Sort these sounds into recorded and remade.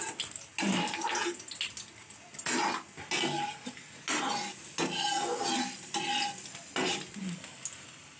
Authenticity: recorded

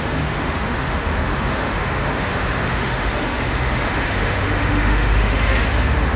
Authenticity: remade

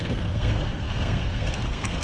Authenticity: remade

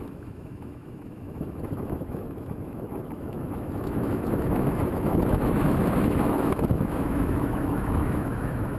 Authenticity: remade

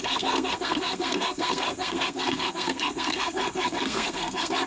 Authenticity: remade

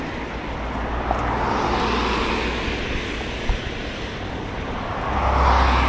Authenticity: recorded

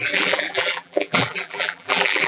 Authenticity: remade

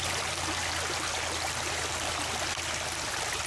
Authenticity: recorded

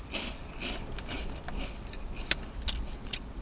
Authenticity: recorded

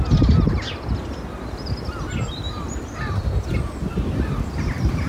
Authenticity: recorded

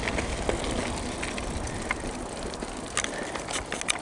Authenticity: recorded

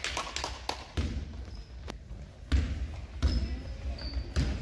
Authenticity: recorded